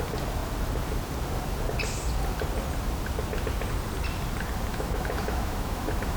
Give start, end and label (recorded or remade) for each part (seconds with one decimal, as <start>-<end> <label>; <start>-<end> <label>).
0.0-4.7 recorded; 4.7-6.2 remade